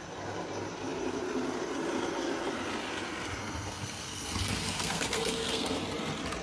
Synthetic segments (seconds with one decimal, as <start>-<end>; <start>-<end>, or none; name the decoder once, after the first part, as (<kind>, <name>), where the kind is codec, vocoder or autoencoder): 3.4-5.8 (codec, SNAC)